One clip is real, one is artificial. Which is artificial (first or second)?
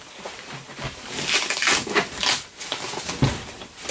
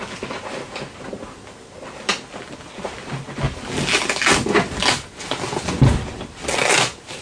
first